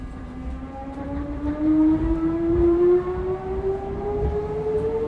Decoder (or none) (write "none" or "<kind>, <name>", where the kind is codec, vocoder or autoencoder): vocoder, BigVGAN v2